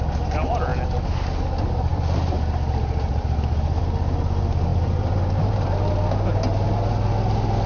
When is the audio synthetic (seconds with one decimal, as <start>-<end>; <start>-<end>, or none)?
4.7-5.9